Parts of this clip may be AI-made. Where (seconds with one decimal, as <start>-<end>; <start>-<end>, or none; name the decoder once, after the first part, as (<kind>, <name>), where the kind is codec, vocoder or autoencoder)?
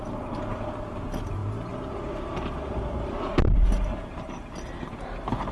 none